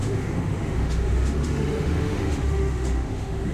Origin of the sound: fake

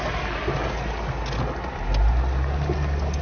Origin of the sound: real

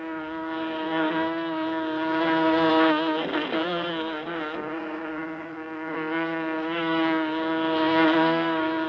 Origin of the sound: fake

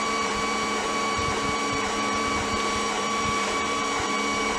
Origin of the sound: fake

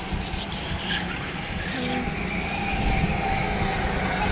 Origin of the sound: real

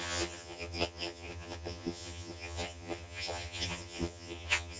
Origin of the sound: fake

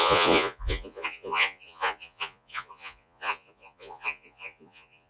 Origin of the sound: fake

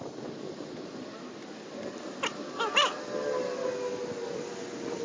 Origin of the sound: real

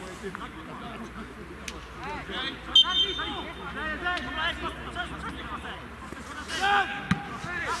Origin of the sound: real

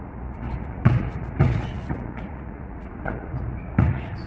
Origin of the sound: fake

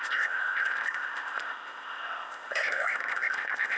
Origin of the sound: fake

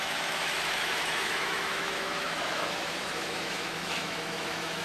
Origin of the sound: fake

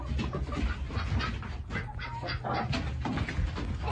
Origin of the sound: real